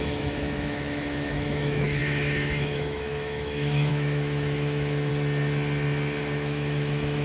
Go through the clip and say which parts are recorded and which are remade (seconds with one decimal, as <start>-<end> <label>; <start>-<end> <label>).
0.0-5.1 remade; 5.1-6.2 recorded; 6.2-7.2 remade